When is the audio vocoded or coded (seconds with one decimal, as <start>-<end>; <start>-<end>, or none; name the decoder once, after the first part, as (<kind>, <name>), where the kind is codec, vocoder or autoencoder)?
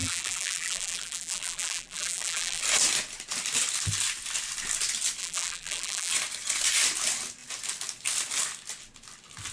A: 0.0-2.6 (vocoder, BigVGAN v2); 5.2-6.1